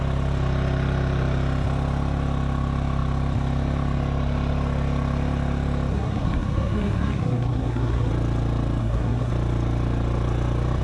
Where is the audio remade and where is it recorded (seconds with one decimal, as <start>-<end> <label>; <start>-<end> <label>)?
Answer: 0.0-5.9 recorded; 5.9-8.1 remade; 8.1-8.8 recorded; 8.8-9.3 remade; 9.3-10.8 recorded